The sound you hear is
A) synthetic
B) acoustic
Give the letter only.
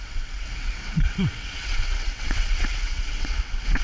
A